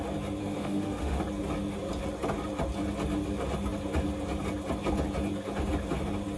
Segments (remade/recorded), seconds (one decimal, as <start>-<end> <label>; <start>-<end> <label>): 0.0-0.4 recorded; 0.4-1.2 remade; 1.2-6.4 recorded